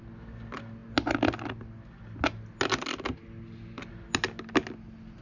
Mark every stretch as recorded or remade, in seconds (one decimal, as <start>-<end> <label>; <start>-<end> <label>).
0.0-5.2 recorded